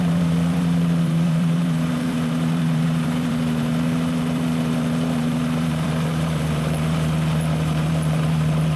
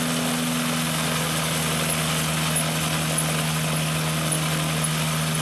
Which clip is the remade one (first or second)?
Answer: first